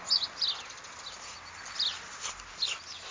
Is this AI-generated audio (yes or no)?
no